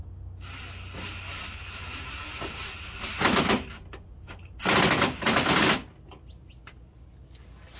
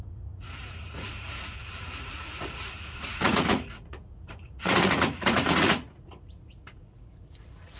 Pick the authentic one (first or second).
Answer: first